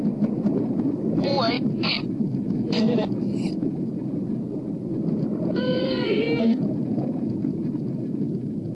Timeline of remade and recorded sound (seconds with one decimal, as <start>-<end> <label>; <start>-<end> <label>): 0.0-5.8 recorded; 5.8-6.6 remade; 6.6-8.7 recorded